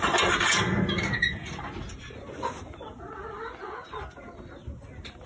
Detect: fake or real real